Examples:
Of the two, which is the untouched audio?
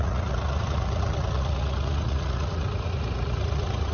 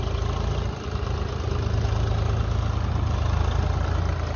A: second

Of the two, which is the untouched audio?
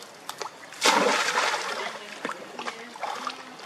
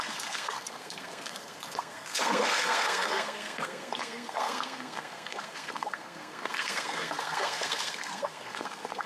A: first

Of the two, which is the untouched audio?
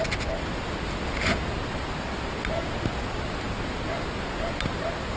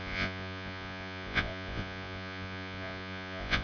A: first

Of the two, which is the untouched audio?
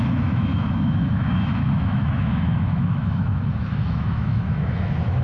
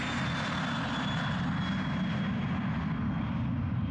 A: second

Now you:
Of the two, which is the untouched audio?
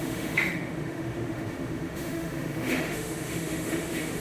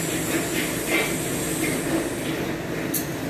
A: second